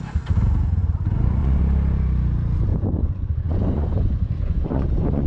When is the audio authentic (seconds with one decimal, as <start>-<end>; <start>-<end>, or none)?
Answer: 0.0-0.8; 1.6-2.7